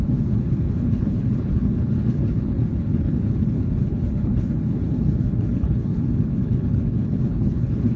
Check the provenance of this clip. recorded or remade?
remade